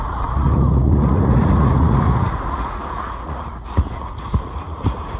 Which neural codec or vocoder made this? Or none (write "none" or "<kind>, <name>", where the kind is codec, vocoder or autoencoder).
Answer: vocoder, Vocos